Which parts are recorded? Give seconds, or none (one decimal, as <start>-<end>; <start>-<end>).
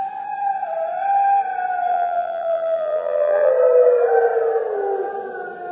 0.0-1.9; 3.5-5.7